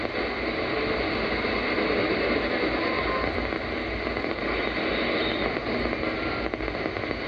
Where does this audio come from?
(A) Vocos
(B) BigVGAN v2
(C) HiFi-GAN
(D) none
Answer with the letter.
D